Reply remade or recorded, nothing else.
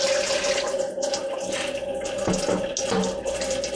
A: recorded